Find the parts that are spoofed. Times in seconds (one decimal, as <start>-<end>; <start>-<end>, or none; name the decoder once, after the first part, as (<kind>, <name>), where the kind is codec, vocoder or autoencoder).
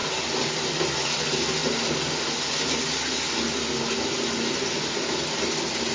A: none